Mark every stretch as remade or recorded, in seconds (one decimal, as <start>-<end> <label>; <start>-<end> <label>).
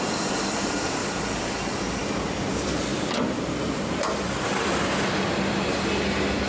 0.0-1.0 recorded; 1.0-1.6 remade; 1.6-2.0 recorded; 2.0-2.5 remade; 2.5-2.9 recorded; 2.9-5.5 remade; 5.5-6.5 recorded